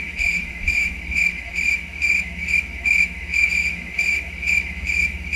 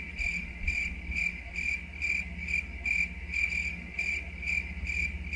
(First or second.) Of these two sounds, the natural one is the second